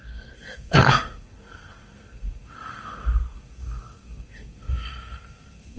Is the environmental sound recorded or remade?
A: remade